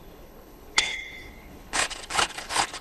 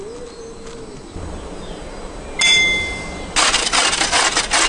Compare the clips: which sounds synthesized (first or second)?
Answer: first